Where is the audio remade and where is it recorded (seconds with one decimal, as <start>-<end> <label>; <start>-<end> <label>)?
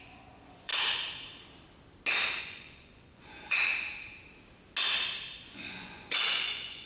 0.0-0.7 remade; 0.7-2.4 recorded; 2.4-3.7 remade; 3.7-5.4 recorded; 5.4-6.8 remade